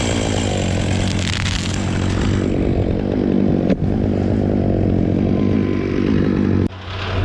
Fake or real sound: real